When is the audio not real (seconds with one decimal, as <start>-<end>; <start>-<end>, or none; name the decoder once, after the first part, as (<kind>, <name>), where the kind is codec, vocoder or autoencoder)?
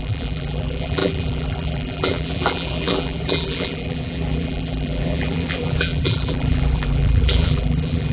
0.0-8.1 (vocoder, BigVGAN v2)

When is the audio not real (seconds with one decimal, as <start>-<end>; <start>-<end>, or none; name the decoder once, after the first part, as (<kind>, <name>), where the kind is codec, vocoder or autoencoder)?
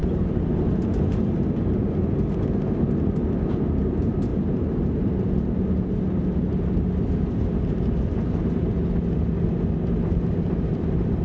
none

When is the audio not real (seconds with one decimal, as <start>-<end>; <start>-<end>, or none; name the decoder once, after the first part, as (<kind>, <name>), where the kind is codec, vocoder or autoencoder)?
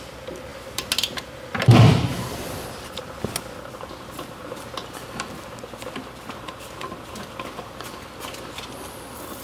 none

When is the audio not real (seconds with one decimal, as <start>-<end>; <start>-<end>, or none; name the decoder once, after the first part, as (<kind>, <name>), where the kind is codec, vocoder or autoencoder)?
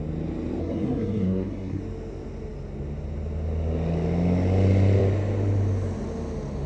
0.6-1.8 (codec, SNAC)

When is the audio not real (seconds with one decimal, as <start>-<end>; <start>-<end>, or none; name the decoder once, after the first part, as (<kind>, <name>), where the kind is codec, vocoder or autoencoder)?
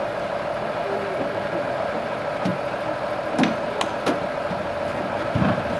0.0-2.5 (vocoder, BigVGAN v2); 4.3-5.8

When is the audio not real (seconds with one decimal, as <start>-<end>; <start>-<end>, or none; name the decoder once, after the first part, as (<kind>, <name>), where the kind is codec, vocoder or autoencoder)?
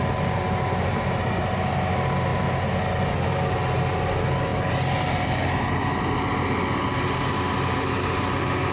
none